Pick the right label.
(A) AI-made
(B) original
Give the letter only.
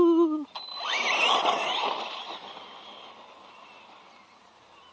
B